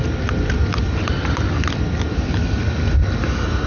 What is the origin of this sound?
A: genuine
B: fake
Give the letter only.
A